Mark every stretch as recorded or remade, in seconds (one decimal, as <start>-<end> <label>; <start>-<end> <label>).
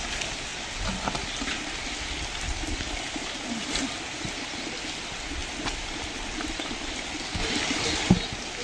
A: 0.0-5.4 recorded; 5.4-6.9 remade; 6.9-7.4 recorded; 7.4-8.1 remade; 8.1-8.6 recorded